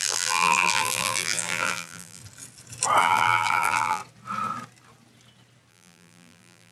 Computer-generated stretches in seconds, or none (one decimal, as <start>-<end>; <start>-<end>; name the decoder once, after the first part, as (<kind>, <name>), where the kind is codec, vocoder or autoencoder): 0.0-2.2 (vocoder, BigVGAN v2); 3.0-4.0; 5.7-6.7